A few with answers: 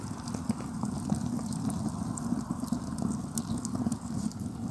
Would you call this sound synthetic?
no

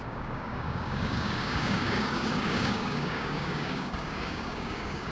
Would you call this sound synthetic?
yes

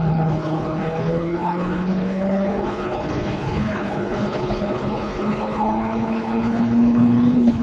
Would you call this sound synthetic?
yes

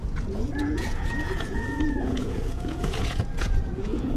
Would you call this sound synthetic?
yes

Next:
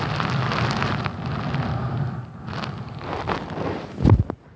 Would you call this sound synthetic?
no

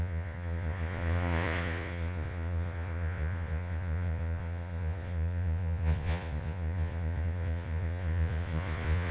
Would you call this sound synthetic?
yes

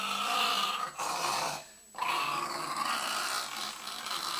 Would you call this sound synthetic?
no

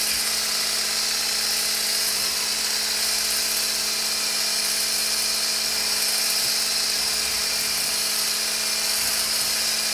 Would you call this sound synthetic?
no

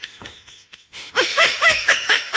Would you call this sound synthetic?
yes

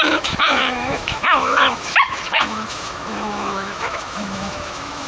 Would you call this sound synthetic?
yes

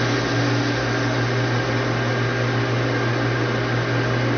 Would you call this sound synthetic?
no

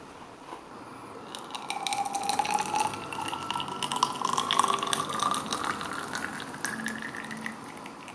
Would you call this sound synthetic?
no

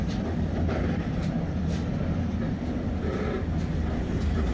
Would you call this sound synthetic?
no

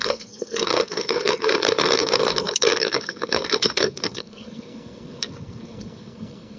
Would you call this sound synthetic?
yes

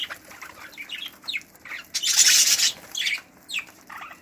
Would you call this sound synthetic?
no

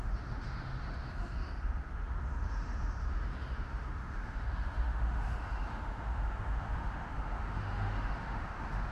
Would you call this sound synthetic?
yes